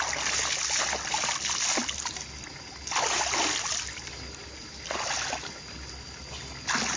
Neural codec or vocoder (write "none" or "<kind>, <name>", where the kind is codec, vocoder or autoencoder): none